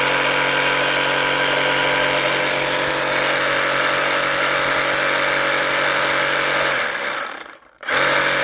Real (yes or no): yes